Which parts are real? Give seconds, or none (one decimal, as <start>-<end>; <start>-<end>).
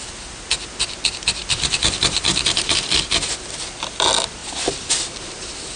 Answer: 0.0-1.4; 3.0-5.8